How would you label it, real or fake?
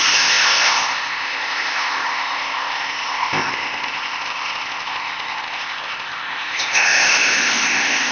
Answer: fake